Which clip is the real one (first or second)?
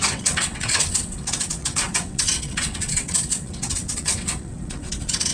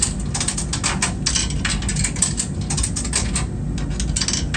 second